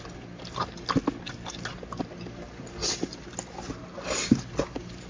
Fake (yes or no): no